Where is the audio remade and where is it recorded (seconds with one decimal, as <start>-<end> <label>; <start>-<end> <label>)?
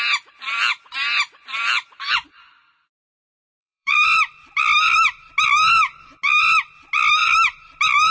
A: 0.0-3.6 recorded; 3.6-5.3 remade; 5.3-7.2 recorded; 7.2-8.1 remade